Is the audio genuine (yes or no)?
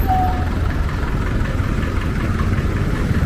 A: no